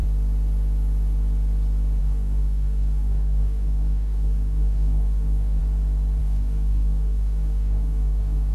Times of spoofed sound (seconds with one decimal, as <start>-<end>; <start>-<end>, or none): 2.0-5.6; 6.2-8.5